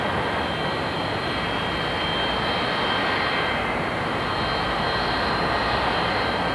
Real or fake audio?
real